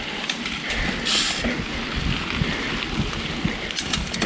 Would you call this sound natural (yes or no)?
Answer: yes